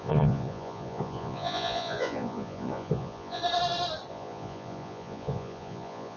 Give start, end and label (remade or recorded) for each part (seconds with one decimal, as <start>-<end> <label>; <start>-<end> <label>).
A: 0.0-3.4 remade; 3.4-4.1 recorded; 4.1-6.2 remade